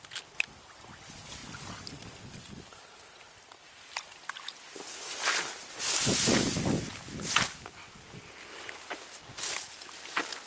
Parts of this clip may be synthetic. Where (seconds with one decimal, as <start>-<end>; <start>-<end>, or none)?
none